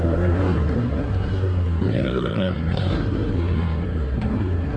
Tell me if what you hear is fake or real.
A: fake